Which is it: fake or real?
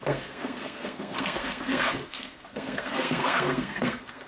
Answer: fake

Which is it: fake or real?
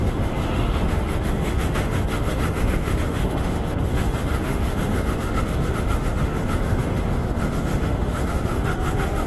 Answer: fake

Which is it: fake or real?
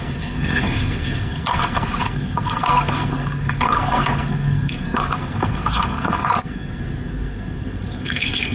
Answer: fake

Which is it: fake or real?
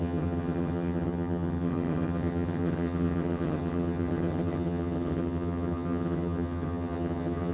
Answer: fake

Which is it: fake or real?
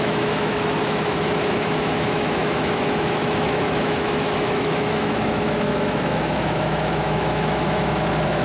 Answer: fake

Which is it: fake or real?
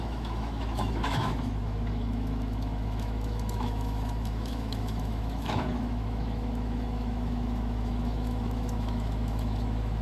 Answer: fake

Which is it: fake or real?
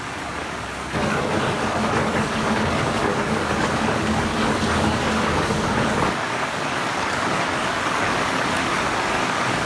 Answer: fake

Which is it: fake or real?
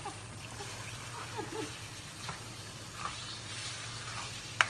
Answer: real